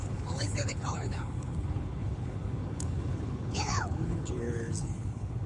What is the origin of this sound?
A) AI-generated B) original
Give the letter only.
A